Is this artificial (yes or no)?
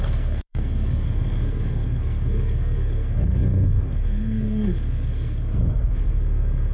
yes